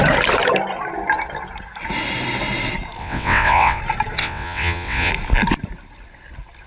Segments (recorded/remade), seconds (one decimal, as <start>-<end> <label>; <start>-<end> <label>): 0.0-3.0 recorded; 3.0-3.8 remade; 3.8-4.2 recorded; 4.2-5.1 remade; 5.1-6.7 recorded